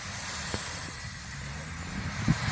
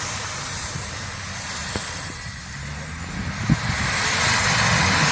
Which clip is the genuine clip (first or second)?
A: second